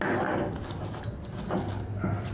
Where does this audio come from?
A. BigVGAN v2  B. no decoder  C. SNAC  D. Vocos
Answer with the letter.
B